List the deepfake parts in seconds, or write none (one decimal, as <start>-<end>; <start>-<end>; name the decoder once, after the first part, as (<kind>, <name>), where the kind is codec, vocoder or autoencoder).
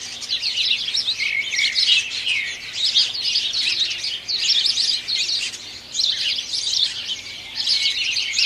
0.0-0.5 (vocoder, BigVGAN v2); 2.1-2.8; 6.1-8.5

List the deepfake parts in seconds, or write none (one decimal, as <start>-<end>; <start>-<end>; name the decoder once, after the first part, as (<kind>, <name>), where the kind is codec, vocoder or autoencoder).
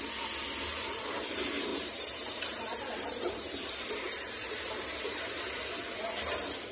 1.7-5.7 (vocoder, BigVGAN v2)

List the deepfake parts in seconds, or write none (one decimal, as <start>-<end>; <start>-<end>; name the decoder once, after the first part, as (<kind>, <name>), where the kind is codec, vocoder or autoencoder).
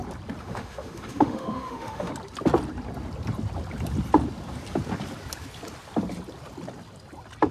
0.4-2.1 (autoencoder, DAC-VAE)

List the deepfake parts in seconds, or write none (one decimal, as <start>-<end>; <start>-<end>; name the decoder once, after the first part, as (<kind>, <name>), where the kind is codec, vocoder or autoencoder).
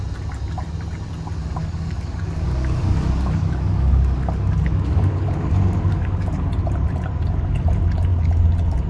1.6-6.5 (codec, DAC)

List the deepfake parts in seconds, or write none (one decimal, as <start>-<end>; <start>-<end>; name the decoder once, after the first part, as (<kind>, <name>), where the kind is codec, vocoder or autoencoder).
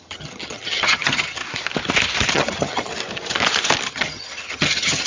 0.0-1.4 (vocoder, HiFi-GAN); 2.3-2.9; 3.9-5.1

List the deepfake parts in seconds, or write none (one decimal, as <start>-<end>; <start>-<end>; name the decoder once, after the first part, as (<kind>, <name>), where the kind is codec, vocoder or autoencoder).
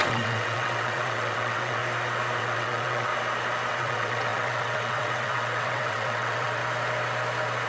0.0-1.8 (vocoder, WaveNeXt); 2.4-3.1; 3.7-6.6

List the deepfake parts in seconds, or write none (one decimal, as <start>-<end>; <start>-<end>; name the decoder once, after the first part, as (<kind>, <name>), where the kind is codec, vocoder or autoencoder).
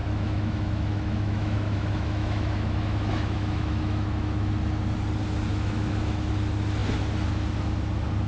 0.0-4.5 (autoencoder, DAC-VAE); 5.5-6.3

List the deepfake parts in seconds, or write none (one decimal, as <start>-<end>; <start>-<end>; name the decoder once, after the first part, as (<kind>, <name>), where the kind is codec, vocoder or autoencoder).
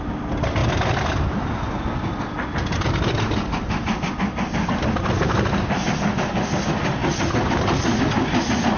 none